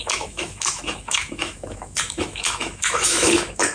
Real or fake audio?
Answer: fake